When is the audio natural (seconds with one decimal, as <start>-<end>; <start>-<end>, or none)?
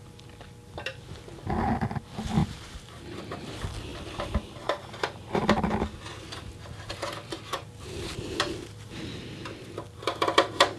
0.0-2.4; 3.4-10.8